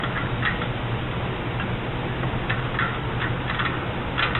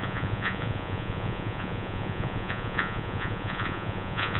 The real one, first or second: first